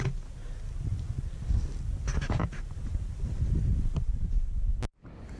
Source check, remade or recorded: recorded